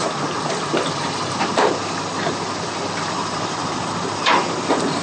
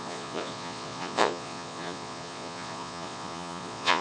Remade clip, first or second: second